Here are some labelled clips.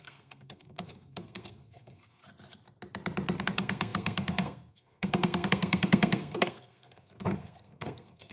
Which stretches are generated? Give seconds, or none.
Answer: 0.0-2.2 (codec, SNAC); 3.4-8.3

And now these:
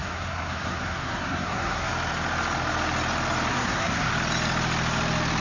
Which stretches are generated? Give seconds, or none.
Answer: 0.0-1.9 (codec, SNAC); 3.5-4.1

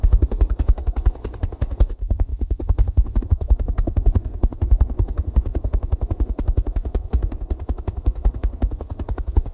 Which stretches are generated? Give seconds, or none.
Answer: 0.0-9.5 (codec, SNAC)